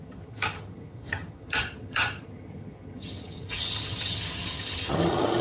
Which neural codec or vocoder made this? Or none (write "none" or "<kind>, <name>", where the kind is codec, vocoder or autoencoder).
vocoder, HiFi-GAN